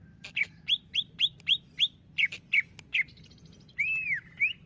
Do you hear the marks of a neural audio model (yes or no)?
no